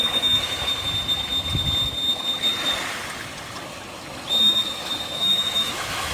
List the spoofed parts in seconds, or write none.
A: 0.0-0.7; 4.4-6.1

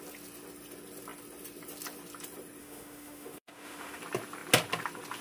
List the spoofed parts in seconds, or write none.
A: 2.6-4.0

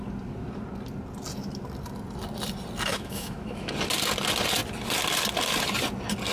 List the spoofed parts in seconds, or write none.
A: 2.9-3.7

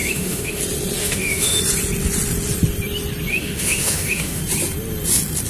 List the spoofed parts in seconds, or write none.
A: 0.0-0.6; 1.0-1.6; 3.3-4.4

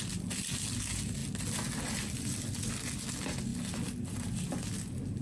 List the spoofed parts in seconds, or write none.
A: none

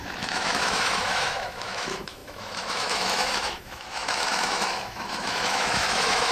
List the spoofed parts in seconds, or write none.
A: 0.0-6.3

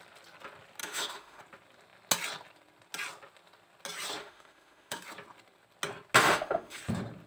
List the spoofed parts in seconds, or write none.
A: 0.8-1.4; 4.2-5.0; 6.2-6.8